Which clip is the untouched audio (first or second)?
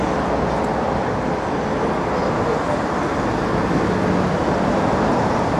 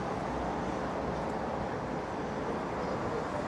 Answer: first